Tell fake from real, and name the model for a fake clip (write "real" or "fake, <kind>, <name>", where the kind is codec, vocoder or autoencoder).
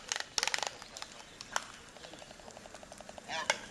real